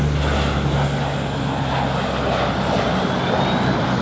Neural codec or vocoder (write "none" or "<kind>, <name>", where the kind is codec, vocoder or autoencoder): none